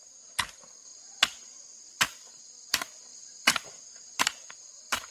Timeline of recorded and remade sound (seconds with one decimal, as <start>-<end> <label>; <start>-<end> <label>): 0.0-0.9 recorded; 0.9-2.7 remade; 2.7-3.1 recorded; 3.1-4.2 remade; 4.2-5.1 recorded